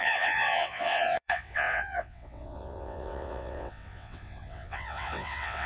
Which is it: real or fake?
fake